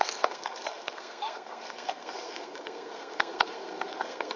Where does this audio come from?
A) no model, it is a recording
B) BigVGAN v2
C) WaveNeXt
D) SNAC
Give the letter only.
D